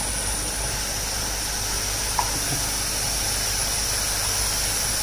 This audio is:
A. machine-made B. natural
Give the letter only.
B